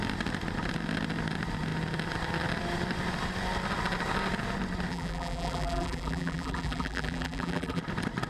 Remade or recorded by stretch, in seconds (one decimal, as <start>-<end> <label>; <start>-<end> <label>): 0.0-4.9 recorded; 4.9-7.8 remade; 7.8-8.3 recorded